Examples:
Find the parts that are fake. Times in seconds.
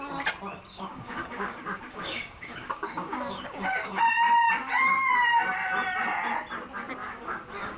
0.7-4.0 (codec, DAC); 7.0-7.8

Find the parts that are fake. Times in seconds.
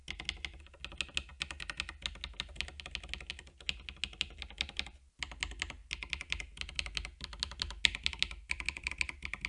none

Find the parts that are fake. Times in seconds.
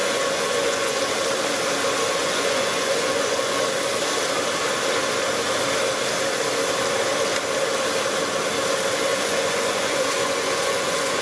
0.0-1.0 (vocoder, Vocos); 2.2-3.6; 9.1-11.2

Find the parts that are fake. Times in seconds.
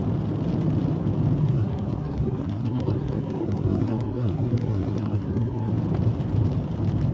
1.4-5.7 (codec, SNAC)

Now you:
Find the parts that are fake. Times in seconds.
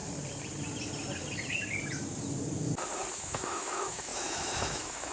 3.1-5.1 (autoencoder, DAC-VAE)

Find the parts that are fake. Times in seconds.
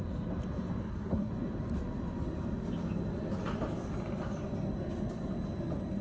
0.8-1.3 (codec, SNAC)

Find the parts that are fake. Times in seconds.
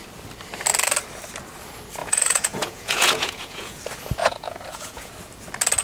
2.0-3.8 (vocoder, Vocos); 4.2-5.1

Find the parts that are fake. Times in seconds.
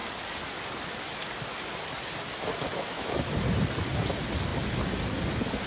2.7-3.3 (autoencoder, DAC-VAE)